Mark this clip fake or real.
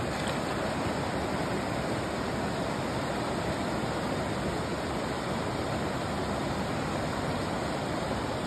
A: real